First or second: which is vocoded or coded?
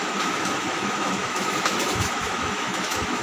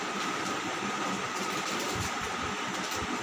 first